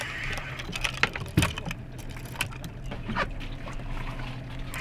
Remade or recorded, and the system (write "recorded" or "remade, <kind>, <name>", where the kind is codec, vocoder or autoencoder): recorded